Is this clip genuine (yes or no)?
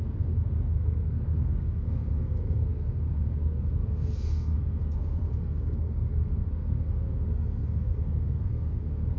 no